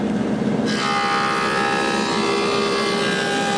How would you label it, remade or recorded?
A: recorded